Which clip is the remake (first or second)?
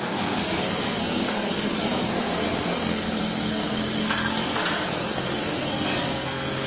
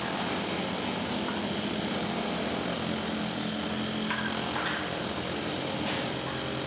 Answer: first